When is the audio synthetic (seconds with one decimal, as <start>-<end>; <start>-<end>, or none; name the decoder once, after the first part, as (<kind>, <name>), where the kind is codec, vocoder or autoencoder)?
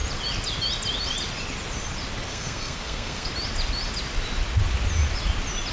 2.3-3.3 (codec, SNAC)